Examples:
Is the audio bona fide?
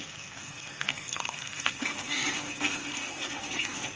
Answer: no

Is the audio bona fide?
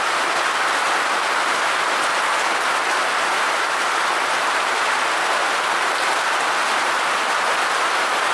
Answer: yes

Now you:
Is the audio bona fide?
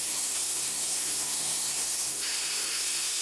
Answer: no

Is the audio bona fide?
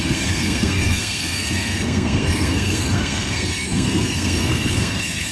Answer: no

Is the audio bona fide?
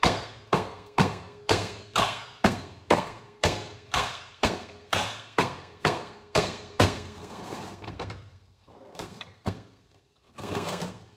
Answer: no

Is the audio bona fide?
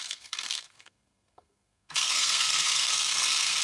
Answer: no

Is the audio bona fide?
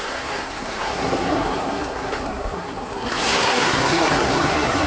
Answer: no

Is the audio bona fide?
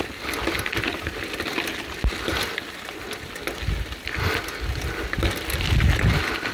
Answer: yes